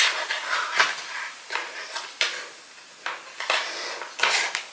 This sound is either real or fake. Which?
real